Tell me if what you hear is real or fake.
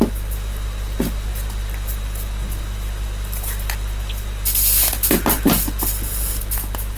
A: real